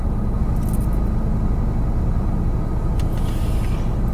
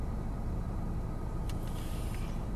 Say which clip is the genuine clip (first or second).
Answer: first